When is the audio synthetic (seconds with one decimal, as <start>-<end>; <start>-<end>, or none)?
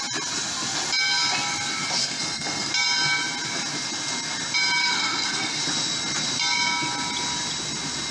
2.0-2.7; 4.8-5.6